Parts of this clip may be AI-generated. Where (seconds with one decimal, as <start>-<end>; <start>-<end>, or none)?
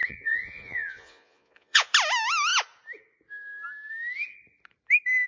0.0-1.9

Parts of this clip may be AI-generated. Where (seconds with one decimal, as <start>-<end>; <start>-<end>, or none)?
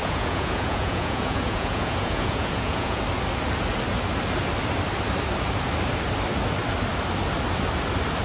0.0-3.0